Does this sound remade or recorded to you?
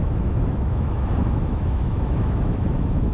remade